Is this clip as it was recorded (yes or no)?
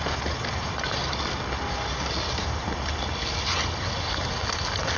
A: yes